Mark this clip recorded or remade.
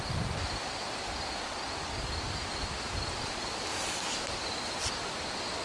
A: remade